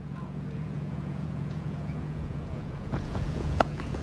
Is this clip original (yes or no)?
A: no